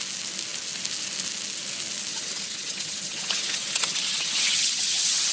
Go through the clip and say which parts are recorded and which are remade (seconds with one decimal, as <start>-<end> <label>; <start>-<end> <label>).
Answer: 0.0-2.1 recorded; 2.1-5.3 remade